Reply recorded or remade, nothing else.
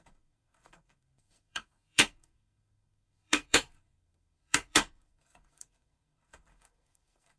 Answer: remade